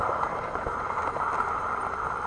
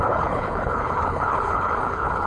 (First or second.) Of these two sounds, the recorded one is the first